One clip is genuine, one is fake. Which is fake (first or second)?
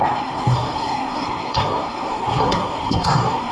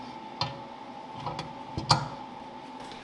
first